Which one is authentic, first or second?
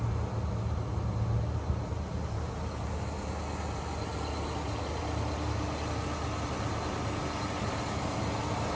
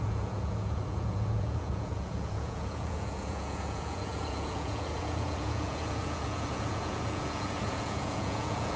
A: first